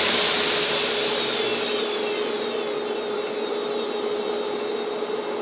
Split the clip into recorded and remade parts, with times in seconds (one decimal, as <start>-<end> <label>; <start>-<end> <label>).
0.0-5.4 recorded